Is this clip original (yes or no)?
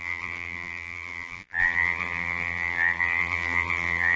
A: no